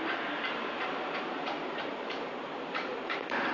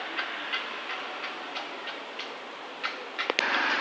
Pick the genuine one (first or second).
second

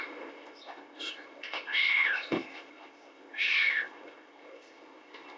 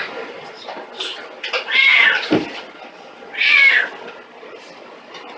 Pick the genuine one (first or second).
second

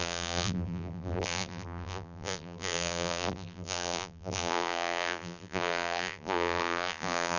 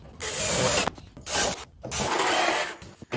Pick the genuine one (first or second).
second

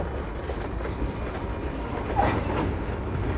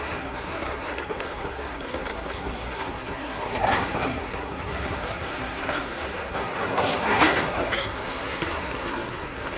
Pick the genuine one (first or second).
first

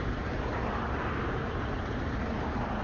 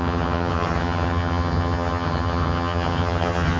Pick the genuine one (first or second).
first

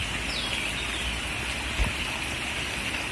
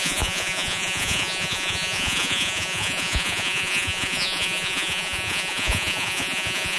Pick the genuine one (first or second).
first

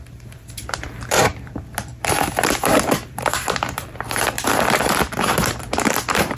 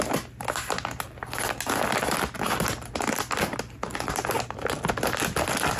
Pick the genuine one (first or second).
second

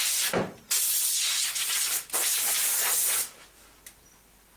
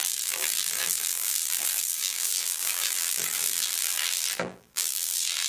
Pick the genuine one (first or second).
first